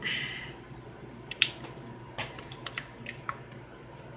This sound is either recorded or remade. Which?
remade